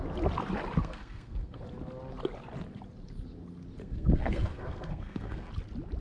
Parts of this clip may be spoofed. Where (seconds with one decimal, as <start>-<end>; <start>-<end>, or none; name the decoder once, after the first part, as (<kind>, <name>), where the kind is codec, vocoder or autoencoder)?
0.8-1.6 (codec, SNAC); 3.8-5.5